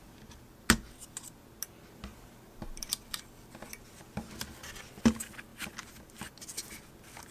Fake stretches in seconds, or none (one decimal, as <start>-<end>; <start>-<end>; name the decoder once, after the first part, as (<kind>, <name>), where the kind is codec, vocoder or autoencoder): none